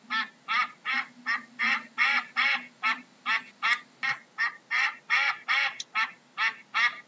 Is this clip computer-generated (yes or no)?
no